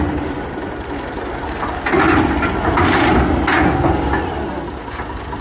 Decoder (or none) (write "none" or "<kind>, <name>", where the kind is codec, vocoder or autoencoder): none